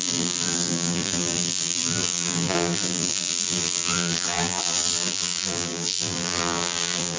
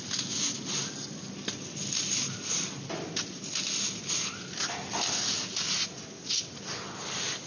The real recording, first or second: second